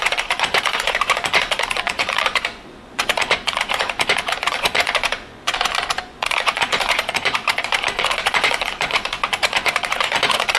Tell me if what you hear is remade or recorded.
remade